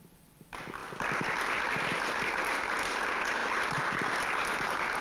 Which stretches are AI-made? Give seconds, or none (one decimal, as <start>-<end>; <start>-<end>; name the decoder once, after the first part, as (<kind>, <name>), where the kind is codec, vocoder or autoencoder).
none